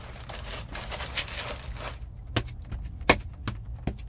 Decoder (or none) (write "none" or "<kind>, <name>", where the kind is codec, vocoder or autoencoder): none